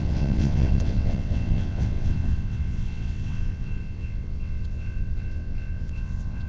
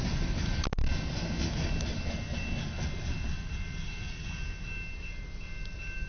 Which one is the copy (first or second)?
first